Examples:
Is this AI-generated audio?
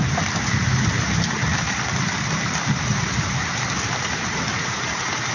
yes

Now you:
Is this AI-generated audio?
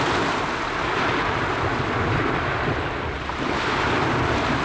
no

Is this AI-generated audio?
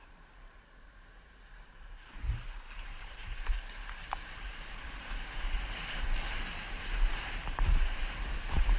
yes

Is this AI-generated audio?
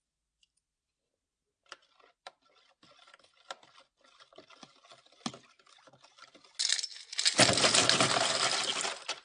no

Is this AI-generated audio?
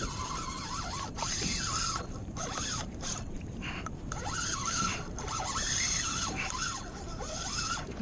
yes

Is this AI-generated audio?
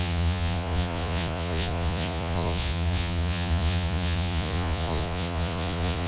yes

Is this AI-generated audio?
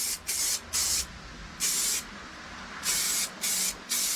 no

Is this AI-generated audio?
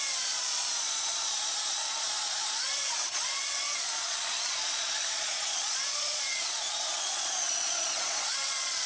yes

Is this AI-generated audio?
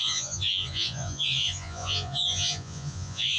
yes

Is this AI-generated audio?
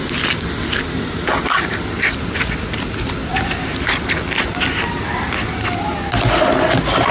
no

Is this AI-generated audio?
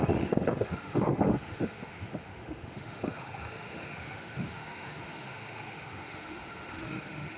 yes